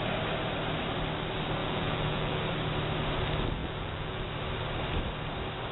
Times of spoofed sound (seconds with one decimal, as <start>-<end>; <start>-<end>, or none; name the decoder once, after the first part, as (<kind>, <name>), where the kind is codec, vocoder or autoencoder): 1.6-2.4 (vocoder, Vocos); 3.6-4.2

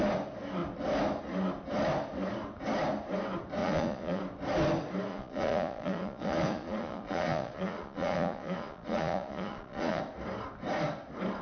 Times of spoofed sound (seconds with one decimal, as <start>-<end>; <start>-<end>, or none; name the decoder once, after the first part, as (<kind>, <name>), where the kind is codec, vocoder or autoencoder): 3.6-4.2 (vocoder, Vocos); 5.1-10.0

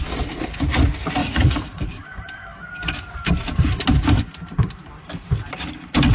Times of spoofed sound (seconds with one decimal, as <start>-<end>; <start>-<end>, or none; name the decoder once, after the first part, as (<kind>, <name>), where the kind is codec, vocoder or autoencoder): 1.2-1.9 (vocoder, Vocos)

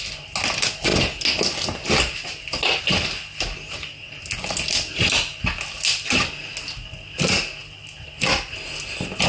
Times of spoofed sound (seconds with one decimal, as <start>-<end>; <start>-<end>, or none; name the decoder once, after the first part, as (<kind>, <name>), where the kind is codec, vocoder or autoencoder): none

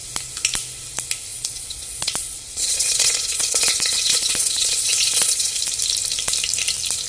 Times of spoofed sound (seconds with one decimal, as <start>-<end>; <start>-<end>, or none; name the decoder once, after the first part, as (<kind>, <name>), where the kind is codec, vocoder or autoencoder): 1.3-5.6 (vocoder, Vocos)